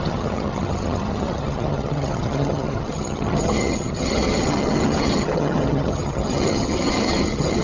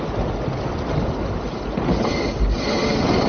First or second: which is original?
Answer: second